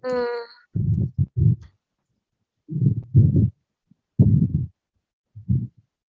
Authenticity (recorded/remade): recorded